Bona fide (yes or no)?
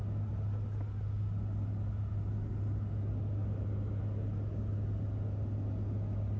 yes